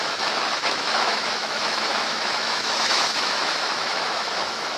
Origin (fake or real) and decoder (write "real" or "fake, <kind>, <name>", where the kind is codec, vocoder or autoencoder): fake, autoencoder, DAC-VAE